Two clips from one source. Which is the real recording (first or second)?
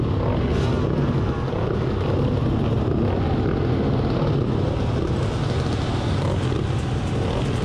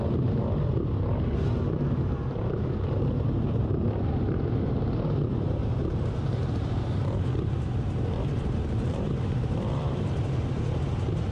first